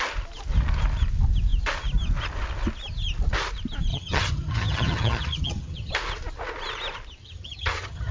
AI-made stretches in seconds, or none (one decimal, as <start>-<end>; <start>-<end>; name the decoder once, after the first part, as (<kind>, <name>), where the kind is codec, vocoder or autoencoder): 3.9-5.9 (vocoder, HiFi-GAN); 7.2-8.1